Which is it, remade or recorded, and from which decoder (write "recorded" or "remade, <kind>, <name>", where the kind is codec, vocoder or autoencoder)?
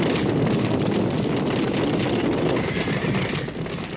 recorded